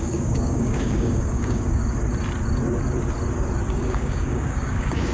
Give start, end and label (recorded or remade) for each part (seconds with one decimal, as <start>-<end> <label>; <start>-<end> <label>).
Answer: 0.0-1.8 remade; 1.8-3.7 recorded; 3.7-5.1 remade